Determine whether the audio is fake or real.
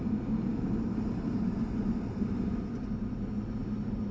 real